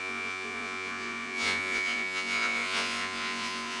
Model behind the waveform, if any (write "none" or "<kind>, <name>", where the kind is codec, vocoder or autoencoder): vocoder, Vocos